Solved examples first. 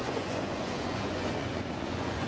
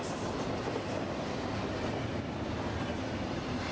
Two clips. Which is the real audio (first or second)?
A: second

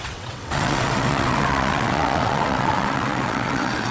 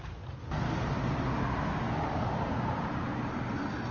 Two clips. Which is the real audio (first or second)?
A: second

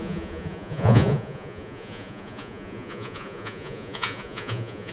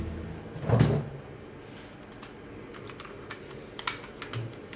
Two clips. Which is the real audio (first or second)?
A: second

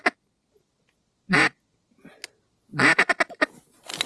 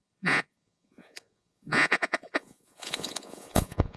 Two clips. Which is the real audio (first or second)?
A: first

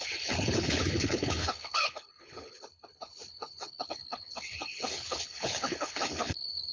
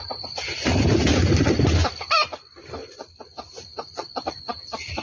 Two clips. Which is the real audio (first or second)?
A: second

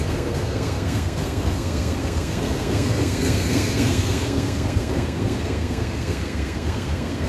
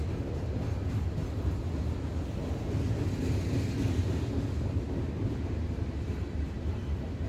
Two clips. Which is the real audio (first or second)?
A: second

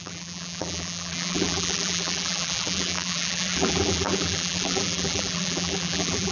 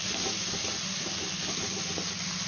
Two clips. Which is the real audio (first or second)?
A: second